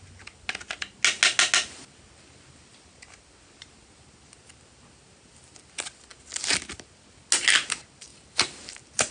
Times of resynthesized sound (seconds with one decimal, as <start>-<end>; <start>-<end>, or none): 8.1-8.6